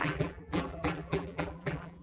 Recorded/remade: remade